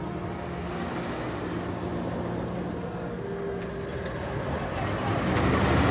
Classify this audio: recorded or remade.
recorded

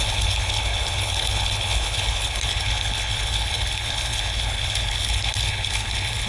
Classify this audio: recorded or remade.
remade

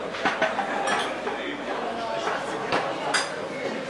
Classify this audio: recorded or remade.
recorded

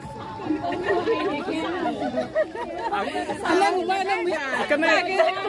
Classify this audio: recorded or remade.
recorded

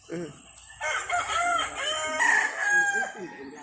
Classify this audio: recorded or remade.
recorded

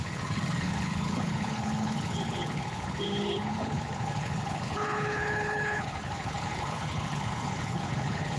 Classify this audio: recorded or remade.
remade